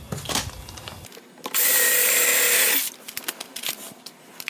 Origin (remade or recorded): recorded